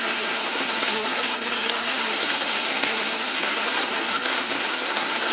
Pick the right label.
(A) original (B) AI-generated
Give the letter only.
B